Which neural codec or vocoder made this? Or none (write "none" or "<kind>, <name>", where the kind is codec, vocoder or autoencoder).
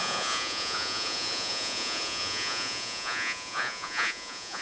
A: vocoder, Vocos